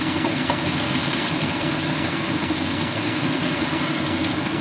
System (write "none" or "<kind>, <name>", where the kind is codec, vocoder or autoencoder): codec, SNAC